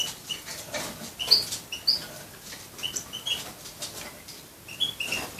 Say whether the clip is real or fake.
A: real